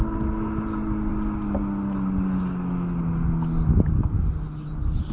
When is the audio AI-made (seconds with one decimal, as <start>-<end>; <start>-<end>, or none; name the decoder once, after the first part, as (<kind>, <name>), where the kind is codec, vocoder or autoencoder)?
none